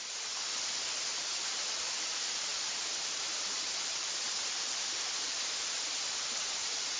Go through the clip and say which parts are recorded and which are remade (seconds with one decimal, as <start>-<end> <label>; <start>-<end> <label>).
0.0-7.0 recorded